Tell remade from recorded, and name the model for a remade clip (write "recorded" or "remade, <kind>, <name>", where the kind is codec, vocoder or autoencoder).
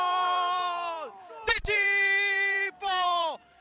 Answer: remade, vocoder, BigVGAN v2